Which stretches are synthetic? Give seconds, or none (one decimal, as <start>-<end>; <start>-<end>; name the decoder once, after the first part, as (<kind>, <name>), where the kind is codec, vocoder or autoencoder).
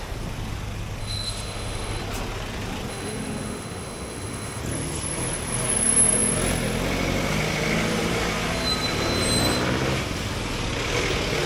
1.0-2.0 (autoencoder, DAC-VAE); 2.9-4.6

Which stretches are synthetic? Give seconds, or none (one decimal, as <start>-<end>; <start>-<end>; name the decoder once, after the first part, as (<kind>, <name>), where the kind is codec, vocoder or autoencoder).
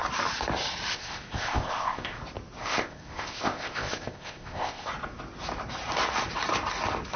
0.9-2.2 (codec, ZipCodec); 2.6-4.9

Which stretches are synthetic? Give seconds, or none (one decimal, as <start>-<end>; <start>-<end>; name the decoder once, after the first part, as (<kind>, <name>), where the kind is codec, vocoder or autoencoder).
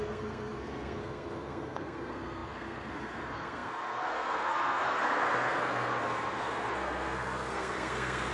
0.0-8.3 (codec, SNAC)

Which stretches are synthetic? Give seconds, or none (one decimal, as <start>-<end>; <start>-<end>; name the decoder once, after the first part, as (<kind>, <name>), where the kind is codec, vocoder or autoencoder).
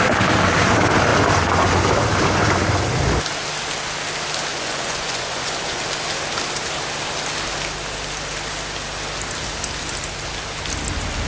4.5-5.8 (vocoder, Vocos)